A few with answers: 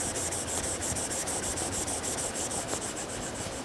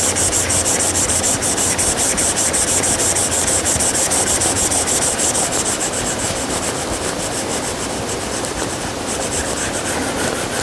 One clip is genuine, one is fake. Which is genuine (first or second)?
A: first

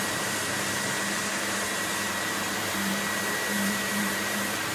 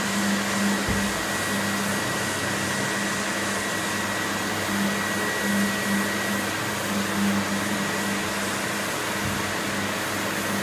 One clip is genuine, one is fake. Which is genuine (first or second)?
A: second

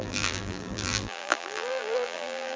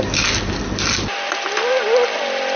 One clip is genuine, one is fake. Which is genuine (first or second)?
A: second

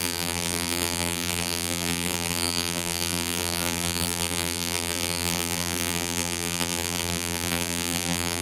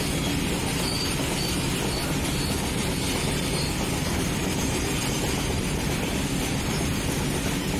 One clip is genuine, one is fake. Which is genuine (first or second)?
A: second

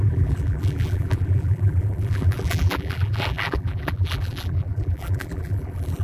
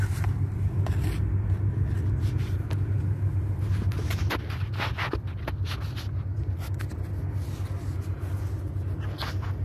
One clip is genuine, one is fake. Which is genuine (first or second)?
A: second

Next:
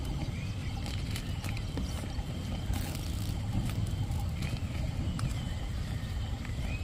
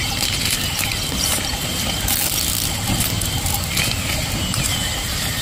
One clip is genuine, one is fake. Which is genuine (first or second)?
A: second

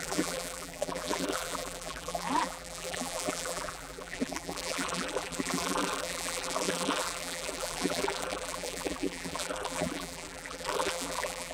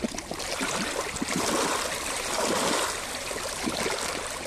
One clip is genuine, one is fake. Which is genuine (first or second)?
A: second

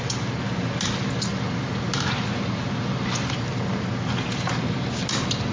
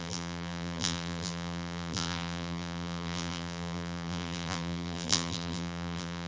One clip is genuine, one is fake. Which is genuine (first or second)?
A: first